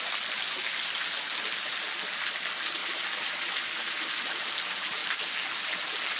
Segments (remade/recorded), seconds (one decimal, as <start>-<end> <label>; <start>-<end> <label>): 0.0-2.8 recorded; 2.8-3.7 remade; 3.7-6.2 recorded